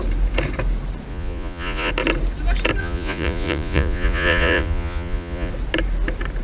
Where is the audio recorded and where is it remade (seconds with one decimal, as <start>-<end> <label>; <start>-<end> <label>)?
0.0-1.1 recorded; 1.1-1.9 remade; 1.9-2.8 recorded; 2.8-5.5 remade; 5.5-6.4 recorded